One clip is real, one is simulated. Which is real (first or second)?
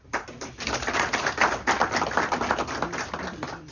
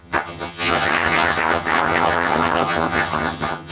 first